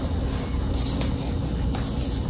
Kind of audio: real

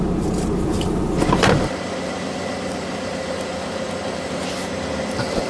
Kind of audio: real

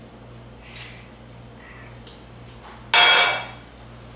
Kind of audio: real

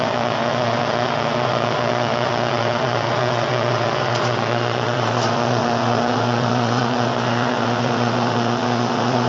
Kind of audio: fake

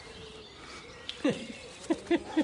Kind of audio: real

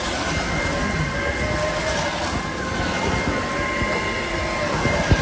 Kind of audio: real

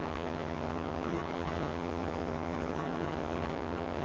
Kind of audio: fake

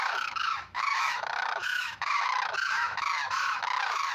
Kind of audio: fake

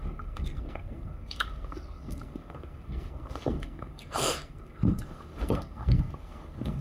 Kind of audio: fake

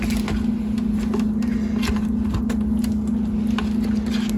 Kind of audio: real